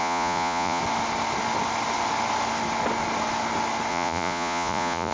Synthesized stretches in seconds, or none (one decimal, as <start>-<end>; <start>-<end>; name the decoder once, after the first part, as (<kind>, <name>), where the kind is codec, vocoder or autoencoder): 0.0-0.8 (vocoder, Vocos); 3.9-5.1

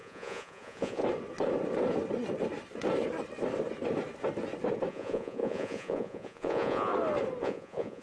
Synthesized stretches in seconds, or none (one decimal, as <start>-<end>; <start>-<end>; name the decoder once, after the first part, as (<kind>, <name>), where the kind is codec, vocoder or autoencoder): 0.0-1.0 (vocoder, Vocos); 4.9-6.9; 7.4-8.0

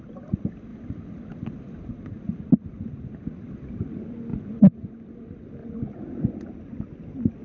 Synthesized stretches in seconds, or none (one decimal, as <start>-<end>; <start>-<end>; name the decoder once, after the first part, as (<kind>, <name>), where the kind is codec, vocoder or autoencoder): 4.3-4.9 (vocoder, Vocos); 5.6-6.1

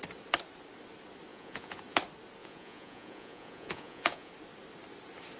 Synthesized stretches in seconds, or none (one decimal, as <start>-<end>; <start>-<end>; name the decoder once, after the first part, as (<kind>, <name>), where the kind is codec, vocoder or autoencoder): 1.3-1.8 (vocoder, Vocos); 2.4-4.3

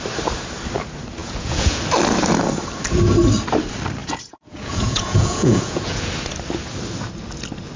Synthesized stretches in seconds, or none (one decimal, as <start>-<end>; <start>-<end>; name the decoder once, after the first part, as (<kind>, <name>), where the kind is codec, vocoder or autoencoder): 1.2-1.8 (vocoder, Vocos); 4.0-6.1

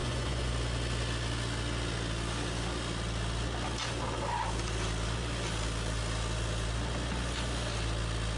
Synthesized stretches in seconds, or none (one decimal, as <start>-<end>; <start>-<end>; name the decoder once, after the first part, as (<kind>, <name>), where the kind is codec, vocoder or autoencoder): 0.0-0.5 (vocoder, Vocos)